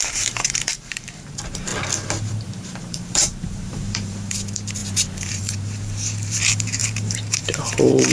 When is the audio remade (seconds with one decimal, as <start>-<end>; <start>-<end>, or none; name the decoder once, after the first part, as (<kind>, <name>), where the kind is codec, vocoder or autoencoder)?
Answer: 0.0-1.7 (vocoder, BigVGAN v2); 2.3-4.8; 5.3-8.1